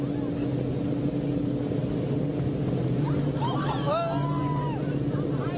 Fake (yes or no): no